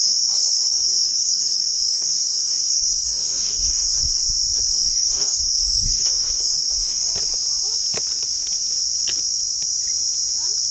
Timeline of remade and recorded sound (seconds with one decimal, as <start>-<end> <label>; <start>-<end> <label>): 0.0-4.1 remade; 4.1-4.7 recorded; 4.7-7.1 remade; 7.1-10.7 recorded